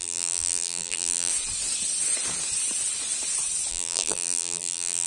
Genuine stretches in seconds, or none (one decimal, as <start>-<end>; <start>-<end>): 1.3-3.7